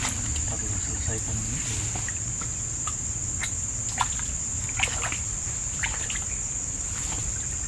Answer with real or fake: real